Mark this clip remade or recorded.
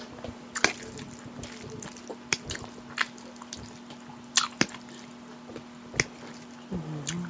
recorded